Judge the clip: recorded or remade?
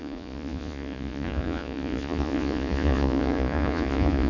remade